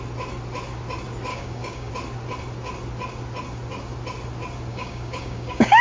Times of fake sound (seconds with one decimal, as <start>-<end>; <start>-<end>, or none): 1.3-1.9; 4.7-5.8